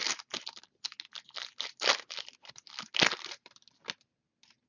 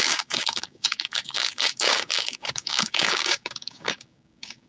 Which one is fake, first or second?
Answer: second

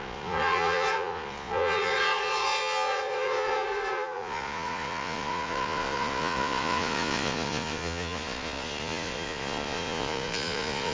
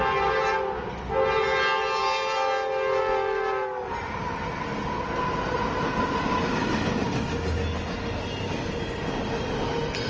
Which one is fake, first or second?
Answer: first